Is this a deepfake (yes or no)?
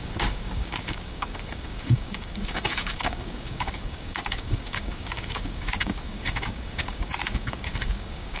yes